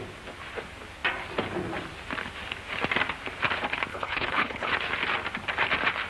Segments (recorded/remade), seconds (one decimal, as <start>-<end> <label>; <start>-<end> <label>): 0.0-3.9 recorded; 3.9-4.7 remade; 4.7-6.1 recorded